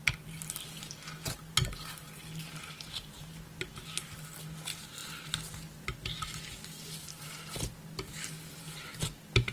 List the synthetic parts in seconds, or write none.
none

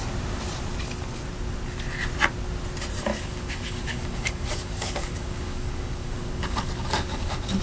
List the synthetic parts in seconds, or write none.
3.1-7.6

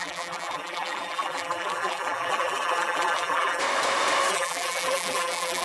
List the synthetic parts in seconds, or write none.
0.0-3.6; 4.3-5.6